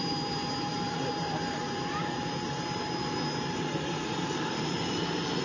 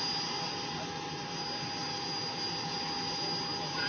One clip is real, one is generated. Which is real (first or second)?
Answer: second